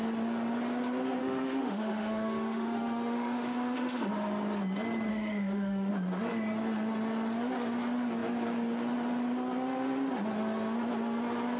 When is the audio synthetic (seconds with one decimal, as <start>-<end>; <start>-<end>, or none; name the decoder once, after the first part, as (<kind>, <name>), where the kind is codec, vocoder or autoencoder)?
1.2-4.1 (autoencoder, DAC-VAE); 5.1-5.9